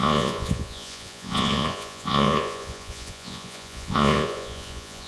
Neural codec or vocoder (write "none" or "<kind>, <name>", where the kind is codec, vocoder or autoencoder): vocoder, Vocos